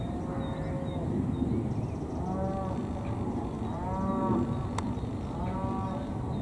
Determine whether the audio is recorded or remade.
recorded